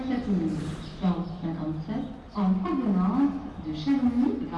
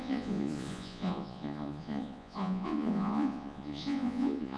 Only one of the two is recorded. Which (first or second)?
first